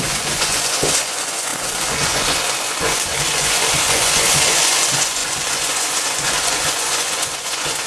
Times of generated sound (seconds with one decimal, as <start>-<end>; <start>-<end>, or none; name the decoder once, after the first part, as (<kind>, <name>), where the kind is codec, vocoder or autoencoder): 0.0-7.9 (vocoder, Vocos)